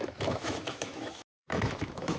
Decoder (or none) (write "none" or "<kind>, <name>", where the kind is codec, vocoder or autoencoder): autoencoder, DAC-VAE